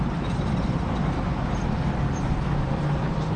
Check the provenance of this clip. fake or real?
fake